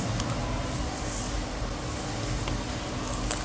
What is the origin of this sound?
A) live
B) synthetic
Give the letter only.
A